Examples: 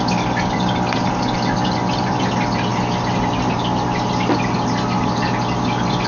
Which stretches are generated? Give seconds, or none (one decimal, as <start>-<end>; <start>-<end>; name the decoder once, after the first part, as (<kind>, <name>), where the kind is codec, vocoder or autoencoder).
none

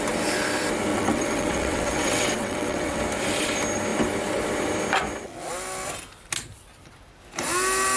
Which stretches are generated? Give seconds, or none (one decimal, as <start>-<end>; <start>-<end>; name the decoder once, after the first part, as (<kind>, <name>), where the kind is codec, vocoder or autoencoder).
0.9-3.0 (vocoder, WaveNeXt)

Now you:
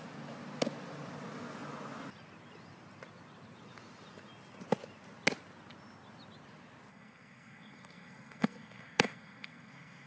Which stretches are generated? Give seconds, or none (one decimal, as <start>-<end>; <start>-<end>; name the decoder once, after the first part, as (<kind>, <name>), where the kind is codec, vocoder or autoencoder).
6.9-10.1 (codec, SNAC)

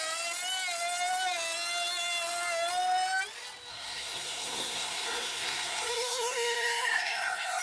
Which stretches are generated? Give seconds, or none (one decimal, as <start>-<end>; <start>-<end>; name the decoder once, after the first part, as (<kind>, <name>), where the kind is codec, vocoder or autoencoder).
3.7-7.6 (codec, SNAC)

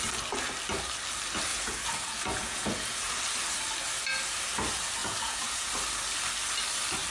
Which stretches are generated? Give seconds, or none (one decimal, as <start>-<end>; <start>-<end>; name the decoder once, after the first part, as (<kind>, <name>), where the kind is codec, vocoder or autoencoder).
1.5-3.1 (vocoder, Vocos); 5.0-5.7

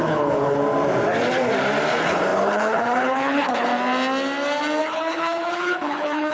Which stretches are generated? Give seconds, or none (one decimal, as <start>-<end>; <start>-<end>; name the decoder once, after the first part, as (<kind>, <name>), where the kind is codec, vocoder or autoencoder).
0.0-0.6 (codec, HILCodec); 1.9-3.7; 4.8-6.3